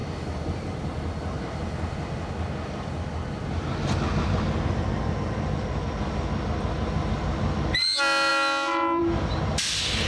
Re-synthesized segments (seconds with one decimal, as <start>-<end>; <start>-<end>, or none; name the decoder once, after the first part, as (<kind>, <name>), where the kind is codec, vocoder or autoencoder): none